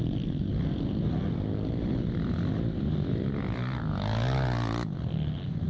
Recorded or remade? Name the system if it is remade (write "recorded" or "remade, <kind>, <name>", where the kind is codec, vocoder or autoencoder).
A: recorded